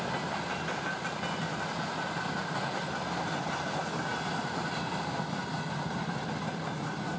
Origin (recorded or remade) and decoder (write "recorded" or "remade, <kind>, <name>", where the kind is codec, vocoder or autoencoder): recorded